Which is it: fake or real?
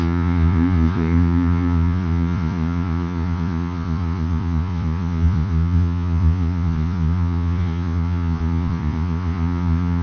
fake